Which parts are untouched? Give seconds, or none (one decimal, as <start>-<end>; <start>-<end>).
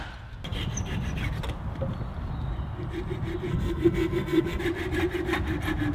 0.0-3.5; 4.6-5.9